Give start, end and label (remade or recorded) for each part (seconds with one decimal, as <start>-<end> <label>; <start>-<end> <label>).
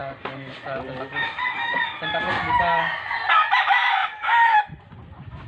0.0-5.5 recorded